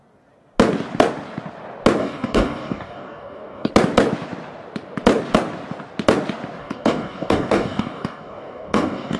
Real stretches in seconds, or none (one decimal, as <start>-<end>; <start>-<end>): 0.0-2.0; 3.7-6.6